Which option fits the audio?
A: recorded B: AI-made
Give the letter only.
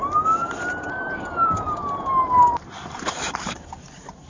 B